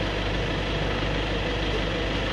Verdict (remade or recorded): recorded